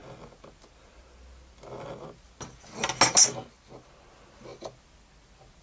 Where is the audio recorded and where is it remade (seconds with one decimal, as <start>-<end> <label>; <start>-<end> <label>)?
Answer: 0.0-5.6 recorded